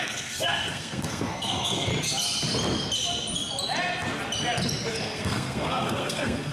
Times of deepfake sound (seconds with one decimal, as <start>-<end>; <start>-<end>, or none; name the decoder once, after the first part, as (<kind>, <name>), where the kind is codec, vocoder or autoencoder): 0.0-1.9 (codec, SNAC); 4.9-6.5